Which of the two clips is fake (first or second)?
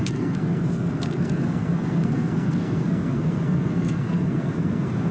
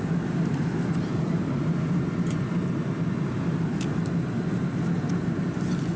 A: first